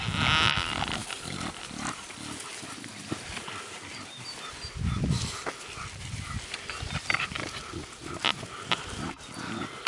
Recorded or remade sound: recorded